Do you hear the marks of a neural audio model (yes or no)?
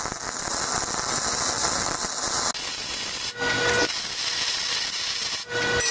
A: no